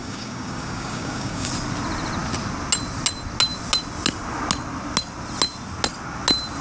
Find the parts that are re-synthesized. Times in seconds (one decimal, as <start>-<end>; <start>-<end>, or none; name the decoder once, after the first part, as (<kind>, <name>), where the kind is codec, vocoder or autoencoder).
0.0-1.5 (codec, DAC)

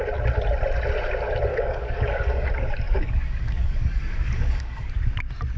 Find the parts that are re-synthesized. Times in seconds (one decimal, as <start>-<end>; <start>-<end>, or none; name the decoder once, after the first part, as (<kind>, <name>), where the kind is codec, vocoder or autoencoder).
1.5-4.9 (codec, DAC)

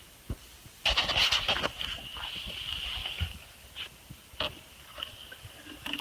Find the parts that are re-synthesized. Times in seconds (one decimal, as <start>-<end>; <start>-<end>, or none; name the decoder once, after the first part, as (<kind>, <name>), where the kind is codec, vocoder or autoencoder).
3.0-3.6 (codec, DAC); 4.7-6.0